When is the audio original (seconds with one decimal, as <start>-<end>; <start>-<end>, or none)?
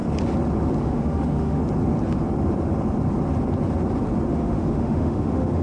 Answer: 0.0-0.8; 1.6-4.3